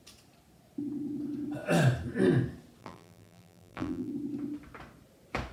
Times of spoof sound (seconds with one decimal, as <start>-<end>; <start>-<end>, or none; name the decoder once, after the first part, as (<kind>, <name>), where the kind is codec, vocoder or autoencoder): 2.8-4.1 (vocoder, BigVGAN v2)